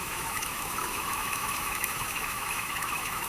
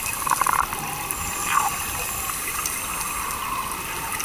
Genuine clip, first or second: second